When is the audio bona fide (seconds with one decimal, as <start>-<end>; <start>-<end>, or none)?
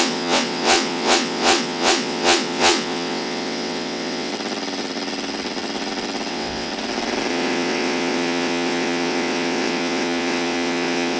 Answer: 4.3-6.3; 6.7-7.3